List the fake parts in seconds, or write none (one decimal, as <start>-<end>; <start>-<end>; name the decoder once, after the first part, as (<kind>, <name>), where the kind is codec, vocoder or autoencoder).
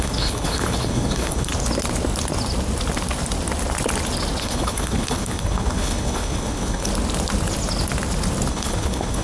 0.0-1.5 (codec, HILCodec); 4.4-6.9; 8.5-9.2